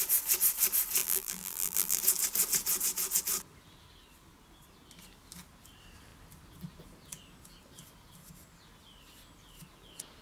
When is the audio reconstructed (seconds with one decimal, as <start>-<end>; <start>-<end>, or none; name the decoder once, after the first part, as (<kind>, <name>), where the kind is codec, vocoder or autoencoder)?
1.0-2.0 (vocoder, BigVGAN v2)